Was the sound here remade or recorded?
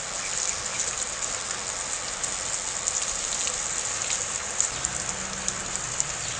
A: recorded